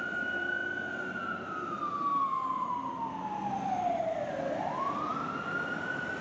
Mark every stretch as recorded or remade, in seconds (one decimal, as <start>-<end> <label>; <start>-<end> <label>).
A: 0.0-6.2 recorded